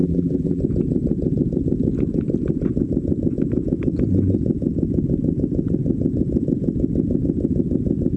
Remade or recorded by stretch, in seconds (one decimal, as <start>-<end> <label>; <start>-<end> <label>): 0.0-0.6 remade; 0.6-8.2 recorded